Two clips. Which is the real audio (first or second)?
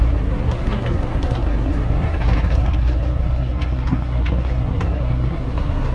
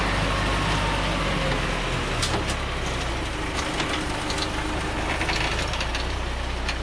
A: second